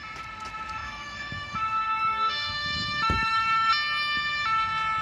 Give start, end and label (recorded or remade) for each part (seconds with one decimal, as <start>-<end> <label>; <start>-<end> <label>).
0.0-0.8 recorded; 0.8-3.7 remade; 3.7-5.0 recorded